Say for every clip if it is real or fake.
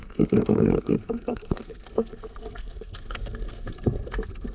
fake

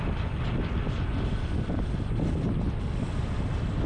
real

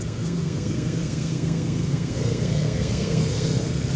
fake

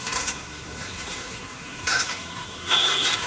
fake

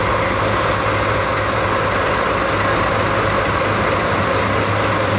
real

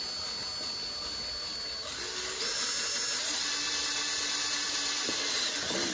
real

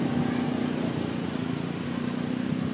real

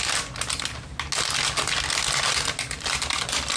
real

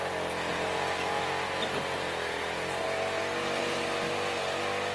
real